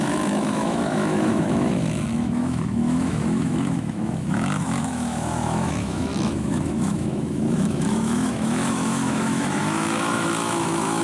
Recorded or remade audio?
remade